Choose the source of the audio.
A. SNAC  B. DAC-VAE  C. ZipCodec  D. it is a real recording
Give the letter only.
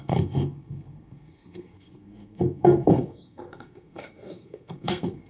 A